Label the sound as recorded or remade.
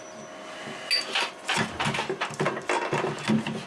recorded